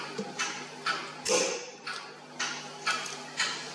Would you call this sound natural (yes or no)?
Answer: yes